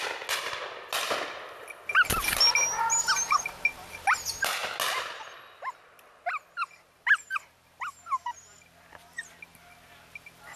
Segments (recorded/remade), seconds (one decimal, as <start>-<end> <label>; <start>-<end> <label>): 0.0-10.6 recorded